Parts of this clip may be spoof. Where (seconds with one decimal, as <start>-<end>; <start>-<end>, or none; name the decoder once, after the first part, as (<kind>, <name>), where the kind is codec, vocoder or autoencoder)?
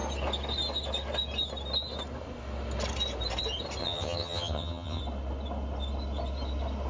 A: 3.8-5.0 (vocoder, HiFi-GAN)